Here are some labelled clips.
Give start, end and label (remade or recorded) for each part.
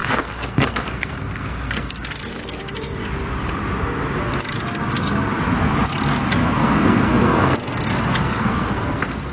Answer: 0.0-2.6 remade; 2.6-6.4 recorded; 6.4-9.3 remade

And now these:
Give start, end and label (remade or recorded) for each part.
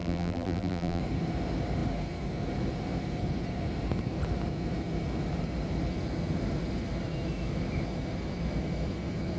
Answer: 0.0-1.0 remade; 1.0-9.4 recorded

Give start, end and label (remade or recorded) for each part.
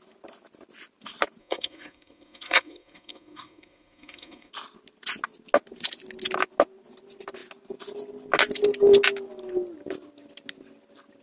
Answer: 0.0-1.4 recorded; 1.4-4.5 remade; 4.5-11.2 recorded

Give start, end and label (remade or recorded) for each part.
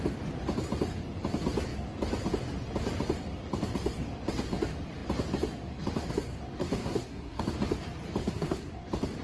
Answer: 0.0-6.6 recorded; 6.6-7.4 remade; 7.4-8.2 recorded; 8.2-8.7 remade; 8.7-9.2 recorded